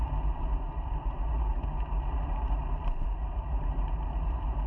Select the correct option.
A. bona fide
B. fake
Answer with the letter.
B